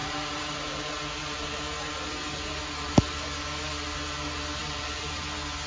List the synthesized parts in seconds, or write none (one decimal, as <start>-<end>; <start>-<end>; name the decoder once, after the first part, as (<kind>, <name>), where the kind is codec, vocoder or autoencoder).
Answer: 0.0-0.9 (vocoder, BigVGAN v2); 4.6-5.2